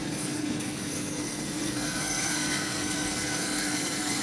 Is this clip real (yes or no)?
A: no